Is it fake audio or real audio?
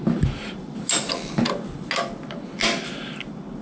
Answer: real